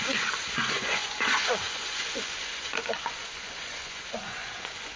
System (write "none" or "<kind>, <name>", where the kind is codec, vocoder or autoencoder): vocoder, Vocos